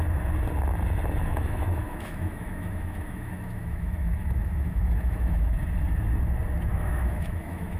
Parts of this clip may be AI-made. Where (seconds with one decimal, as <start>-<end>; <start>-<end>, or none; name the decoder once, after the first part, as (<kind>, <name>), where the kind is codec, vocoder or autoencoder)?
1.2-5.6 (autoencoder, DAC-VAE); 6.7-7.8